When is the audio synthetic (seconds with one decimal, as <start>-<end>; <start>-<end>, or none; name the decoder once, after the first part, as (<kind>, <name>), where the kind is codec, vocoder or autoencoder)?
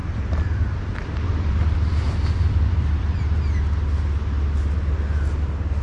0.0-3.4 (vocoder, BigVGAN v2)